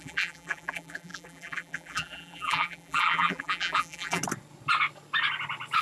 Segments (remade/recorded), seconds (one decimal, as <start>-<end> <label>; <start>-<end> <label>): 0.0-4.2 remade; 4.2-5.8 recorded